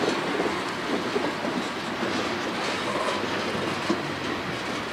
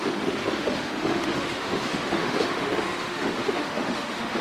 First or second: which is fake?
second